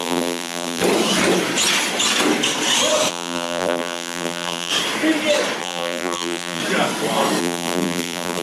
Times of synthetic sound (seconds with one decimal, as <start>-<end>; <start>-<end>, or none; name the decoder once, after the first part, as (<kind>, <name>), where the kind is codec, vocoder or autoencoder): 0.0-0.8 (vocoder, BigVGAN v2); 3.1-4.7; 5.6-6.6; 7.4-8.4